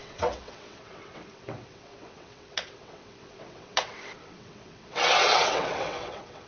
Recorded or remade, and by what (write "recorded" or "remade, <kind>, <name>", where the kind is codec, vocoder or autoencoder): remade, vocoder, WaveNeXt